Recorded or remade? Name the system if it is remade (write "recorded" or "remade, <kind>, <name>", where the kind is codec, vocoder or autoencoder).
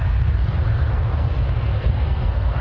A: remade, codec, SNAC